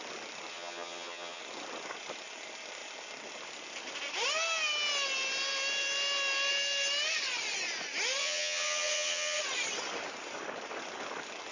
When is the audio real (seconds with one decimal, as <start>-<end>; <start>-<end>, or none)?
0.0-0.5; 1.4-8.2; 9.4-11.5